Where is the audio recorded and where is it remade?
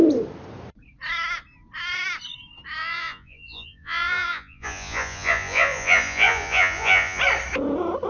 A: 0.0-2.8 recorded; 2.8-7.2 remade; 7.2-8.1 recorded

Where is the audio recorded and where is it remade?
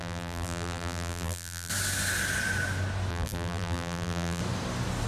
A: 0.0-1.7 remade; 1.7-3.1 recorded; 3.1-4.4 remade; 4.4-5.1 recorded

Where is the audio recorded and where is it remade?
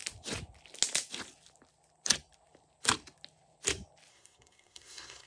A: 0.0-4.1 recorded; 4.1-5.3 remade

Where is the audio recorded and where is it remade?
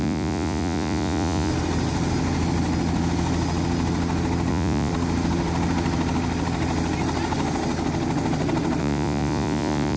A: 0.0-1.5 remade; 1.5-4.5 recorded; 4.5-4.9 remade; 4.9-8.8 recorded; 8.8-10.0 remade